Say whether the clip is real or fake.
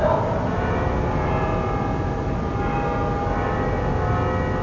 real